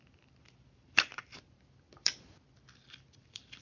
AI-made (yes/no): yes